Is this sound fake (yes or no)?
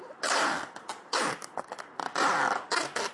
no